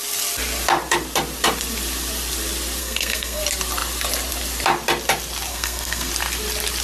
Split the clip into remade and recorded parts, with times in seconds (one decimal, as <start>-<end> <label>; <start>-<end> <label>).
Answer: 0.0-2.8 recorded; 2.8-3.4 remade; 3.4-5.5 recorded; 5.5-6.1 remade; 6.1-6.8 recorded